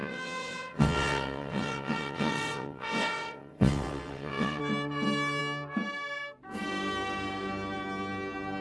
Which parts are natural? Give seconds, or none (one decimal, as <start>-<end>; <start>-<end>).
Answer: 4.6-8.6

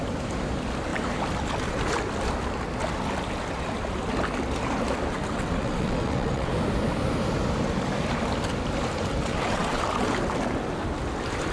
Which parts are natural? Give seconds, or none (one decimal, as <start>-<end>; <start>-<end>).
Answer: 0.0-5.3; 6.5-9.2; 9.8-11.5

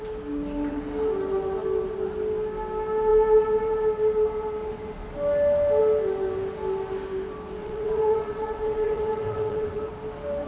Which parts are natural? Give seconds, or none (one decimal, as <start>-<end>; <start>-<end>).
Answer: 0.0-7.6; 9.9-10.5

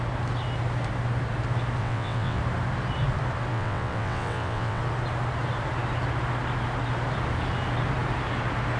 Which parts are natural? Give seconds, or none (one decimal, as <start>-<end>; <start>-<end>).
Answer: 0.0-1.8; 2.4-3.5; 4.8-8.8